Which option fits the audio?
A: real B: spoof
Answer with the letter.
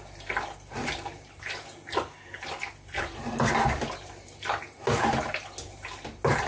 A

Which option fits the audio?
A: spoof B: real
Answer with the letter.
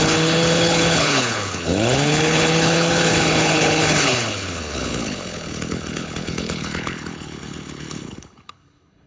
A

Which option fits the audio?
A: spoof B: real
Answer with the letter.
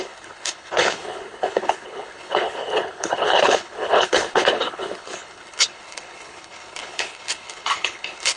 A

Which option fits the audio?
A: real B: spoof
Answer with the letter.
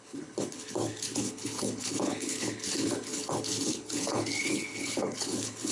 B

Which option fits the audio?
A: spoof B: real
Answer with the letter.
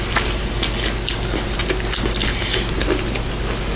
B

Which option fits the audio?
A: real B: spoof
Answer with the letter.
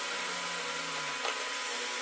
A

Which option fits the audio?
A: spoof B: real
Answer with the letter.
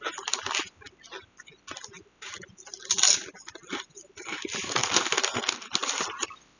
B